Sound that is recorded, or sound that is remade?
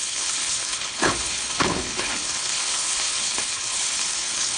remade